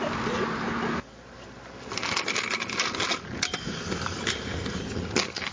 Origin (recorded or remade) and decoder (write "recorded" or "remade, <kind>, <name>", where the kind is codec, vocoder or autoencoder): recorded